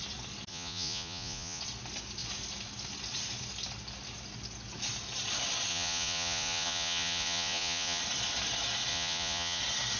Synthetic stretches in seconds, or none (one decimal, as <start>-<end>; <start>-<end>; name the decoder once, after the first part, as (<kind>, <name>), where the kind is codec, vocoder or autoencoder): 0.5-1.6 (vocoder, Vocos); 5.7-8.0; 8.9-9.6